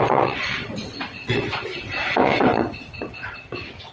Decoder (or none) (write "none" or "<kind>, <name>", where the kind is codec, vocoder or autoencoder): vocoder, WaveNeXt